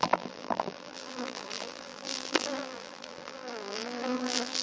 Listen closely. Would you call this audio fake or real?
fake